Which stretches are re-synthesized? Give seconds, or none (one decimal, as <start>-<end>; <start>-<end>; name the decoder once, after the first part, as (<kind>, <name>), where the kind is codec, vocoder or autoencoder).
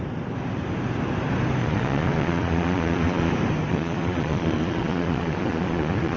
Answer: 1.6-3.3 (vocoder, Vocos); 3.7-6.2